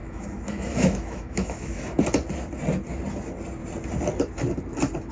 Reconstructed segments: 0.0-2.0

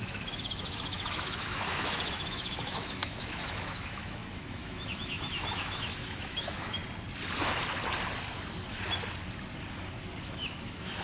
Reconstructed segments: 0.0-6.8; 10.2-11.0